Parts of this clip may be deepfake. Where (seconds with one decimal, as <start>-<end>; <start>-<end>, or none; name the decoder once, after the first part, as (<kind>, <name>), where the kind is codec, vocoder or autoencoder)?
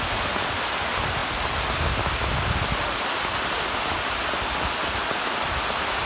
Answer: none